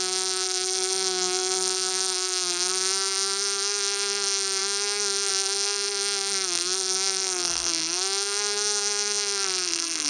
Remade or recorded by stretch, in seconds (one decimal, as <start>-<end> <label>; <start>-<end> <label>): 0.0-10.1 remade